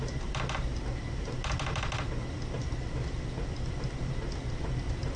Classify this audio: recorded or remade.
recorded